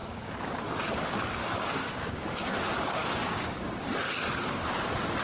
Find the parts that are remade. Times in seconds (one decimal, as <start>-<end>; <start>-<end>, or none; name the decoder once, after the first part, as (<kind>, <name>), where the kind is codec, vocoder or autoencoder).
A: 0.0-0.8 (codec, DAC); 1.4-2.5; 3.0-3.9